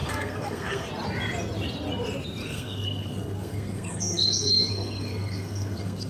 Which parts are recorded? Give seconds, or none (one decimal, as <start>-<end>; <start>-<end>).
0.9-2.4